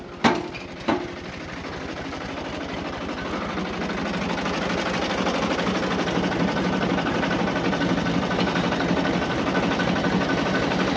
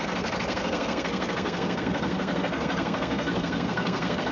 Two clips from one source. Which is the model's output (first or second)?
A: second